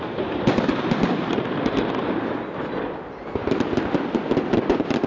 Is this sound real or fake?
real